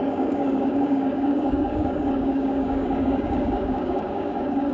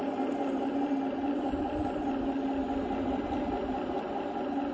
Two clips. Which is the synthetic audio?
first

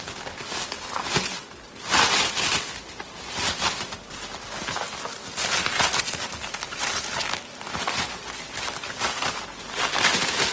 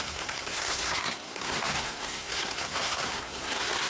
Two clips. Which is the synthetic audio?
second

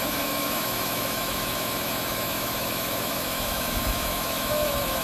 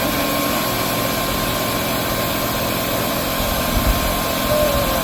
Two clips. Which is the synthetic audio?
first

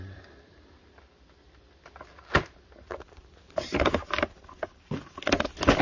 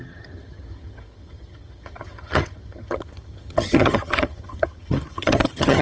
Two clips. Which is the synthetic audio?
second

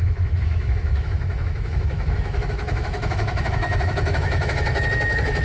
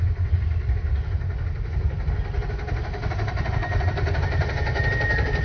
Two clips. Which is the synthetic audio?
first